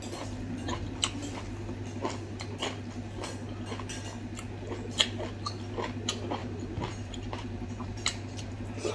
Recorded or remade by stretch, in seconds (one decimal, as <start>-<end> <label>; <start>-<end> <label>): 0.0-6.4 recorded; 6.4-8.9 remade

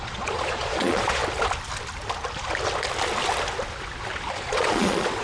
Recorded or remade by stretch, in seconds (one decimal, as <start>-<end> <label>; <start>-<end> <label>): 0.0-1.2 remade; 1.2-4.3 recorded; 4.3-5.2 remade

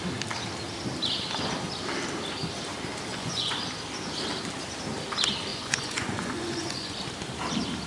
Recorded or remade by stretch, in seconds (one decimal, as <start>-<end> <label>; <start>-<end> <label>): 0.0-3.1 recorded; 3.1-3.6 remade; 3.6-5.5 recorded; 5.5-7.0 remade; 7.0-7.9 recorded

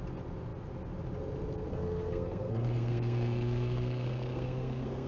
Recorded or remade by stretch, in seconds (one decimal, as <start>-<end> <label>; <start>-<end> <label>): 0.0-1.7 recorded; 1.7-5.1 remade

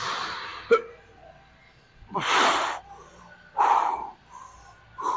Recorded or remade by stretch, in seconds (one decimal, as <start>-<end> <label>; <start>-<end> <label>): 0.0-5.2 recorded

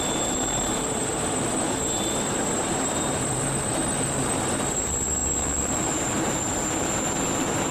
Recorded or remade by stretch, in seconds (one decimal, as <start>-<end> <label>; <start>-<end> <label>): 0.0-7.7 remade